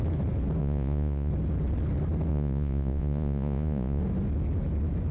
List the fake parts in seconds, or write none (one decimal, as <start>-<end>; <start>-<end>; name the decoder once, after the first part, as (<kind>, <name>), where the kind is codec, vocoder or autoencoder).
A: 0.6-1.3 (vocoder, Vocos); 2.3-4.0